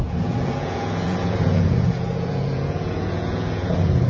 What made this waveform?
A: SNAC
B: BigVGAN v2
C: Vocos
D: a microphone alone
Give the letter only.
C